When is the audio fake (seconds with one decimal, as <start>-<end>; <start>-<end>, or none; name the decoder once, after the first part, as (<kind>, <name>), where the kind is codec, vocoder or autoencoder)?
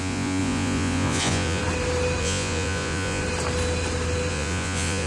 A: 0.0-1.6 (vocoder, Vocos); 2.2-3.2; 4.3-5.1